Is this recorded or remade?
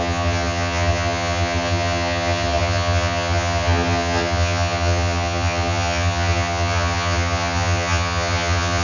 remade